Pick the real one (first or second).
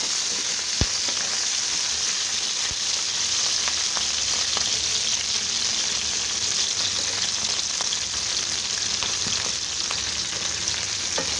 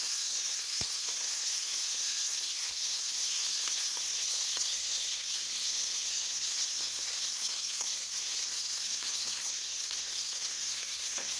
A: first